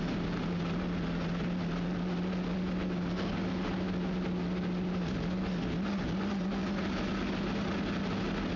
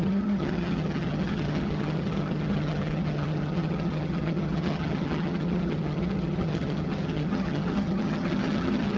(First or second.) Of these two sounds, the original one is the first